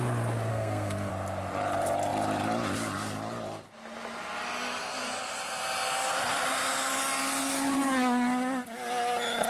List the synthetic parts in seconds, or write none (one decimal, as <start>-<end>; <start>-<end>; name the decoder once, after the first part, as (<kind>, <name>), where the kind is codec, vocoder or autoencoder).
0.5-1.1 (codec, SNAC)